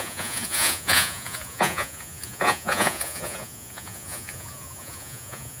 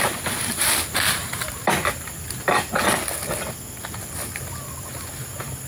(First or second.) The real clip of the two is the second